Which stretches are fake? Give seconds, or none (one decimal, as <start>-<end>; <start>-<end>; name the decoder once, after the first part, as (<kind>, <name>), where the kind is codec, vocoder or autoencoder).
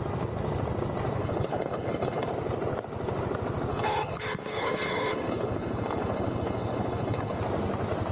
1.2-2.3 (codec, HILCodec); 3.7-7.4